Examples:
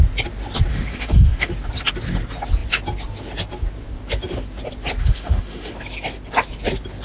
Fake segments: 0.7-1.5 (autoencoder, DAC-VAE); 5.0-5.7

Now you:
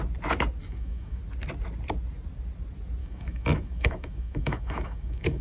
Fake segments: 0.6-1.2 (autoencoder, DAC-VAE); 3.0-5.4